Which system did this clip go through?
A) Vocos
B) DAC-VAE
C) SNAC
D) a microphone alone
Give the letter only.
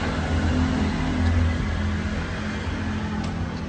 D